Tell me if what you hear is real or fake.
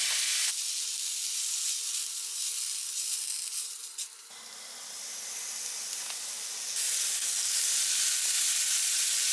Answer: real